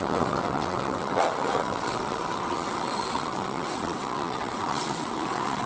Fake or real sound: fake